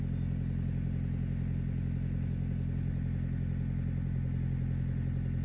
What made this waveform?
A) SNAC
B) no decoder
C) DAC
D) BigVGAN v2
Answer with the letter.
B